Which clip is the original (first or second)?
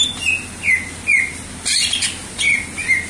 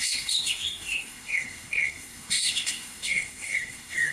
first